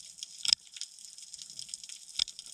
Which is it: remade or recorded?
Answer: recorded